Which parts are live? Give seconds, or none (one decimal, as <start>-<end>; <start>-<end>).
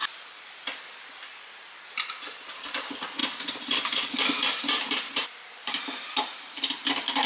0.0-3.2; 5.8-7.3